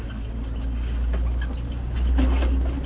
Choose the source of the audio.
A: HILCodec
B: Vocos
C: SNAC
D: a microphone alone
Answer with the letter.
D